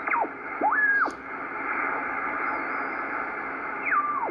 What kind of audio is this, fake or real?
real